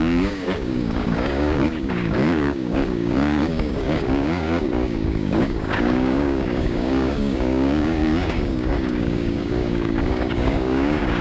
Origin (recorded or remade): remade